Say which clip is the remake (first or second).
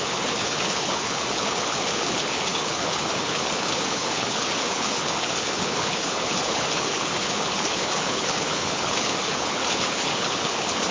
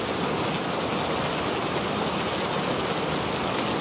first